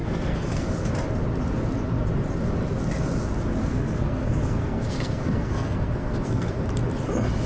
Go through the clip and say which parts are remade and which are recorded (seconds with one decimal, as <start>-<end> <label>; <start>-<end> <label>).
0.0-0.9 remade; 0.9-3.6 recorded; 3.6-6.6 remade; 6.6-7.5 recorded